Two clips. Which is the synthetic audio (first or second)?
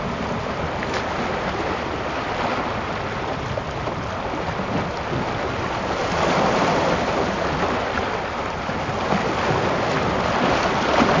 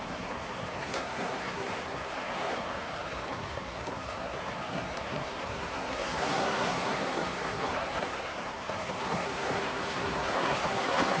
second